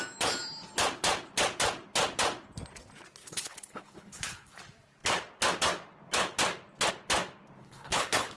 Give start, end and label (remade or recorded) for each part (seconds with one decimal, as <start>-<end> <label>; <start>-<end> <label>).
0.0-3.2 recorded; 3.2-4.6 remade; 4.6-7.6 recorded; 7.6-8.4 remade